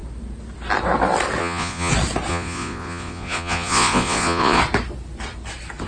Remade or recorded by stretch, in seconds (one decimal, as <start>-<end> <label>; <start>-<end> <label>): 0.0-1.4 recorded; 1.4-1.9 remade; 1.9-2.3 recorded; 2.3-4.6 remade; 4.6-5.9 recorded